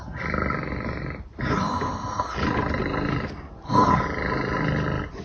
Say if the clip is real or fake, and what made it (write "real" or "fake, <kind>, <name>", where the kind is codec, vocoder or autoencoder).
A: real